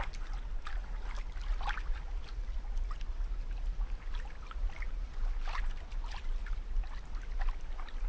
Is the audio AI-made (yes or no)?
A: no